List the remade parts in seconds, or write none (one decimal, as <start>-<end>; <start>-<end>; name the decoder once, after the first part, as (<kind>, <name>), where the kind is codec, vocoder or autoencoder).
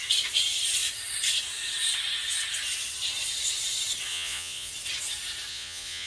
4.1-4.7 (vocoder, Vocos); 5.5-6.1